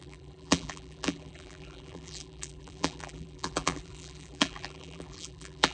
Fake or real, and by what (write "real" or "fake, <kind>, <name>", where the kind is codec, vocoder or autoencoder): fake, vocoder, BigVGAN v2